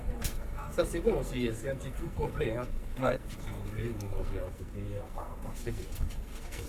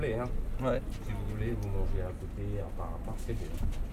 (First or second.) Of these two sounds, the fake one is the first